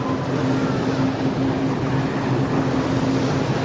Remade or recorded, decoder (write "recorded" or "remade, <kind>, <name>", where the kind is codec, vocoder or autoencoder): recorded